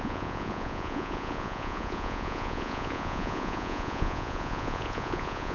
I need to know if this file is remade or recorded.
remade